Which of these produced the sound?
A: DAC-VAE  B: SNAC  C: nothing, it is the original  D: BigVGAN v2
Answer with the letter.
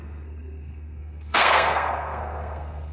B